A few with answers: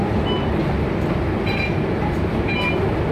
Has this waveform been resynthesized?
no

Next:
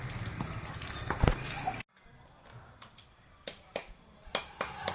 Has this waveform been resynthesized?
no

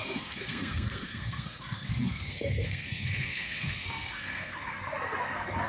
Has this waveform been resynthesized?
yes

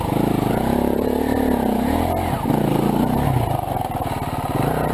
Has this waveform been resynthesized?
no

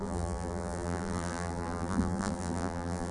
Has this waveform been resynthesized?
yes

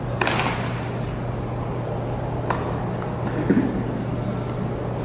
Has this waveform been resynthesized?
no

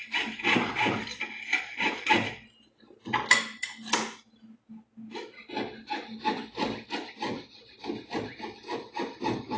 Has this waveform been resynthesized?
no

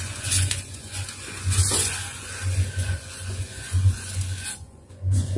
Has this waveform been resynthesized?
yes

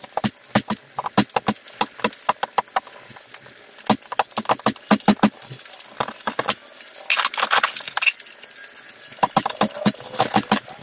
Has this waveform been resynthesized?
no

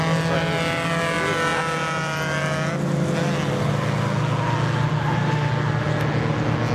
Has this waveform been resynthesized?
no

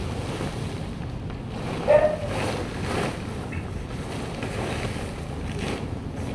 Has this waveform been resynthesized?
no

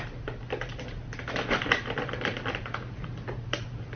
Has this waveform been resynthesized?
no